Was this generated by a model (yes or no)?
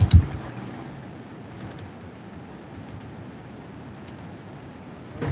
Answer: no